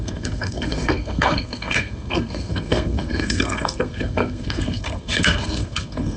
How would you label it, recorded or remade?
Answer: remade